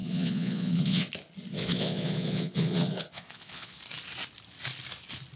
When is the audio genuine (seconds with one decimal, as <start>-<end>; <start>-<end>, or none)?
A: 1.1-1.5; 3.8-5.4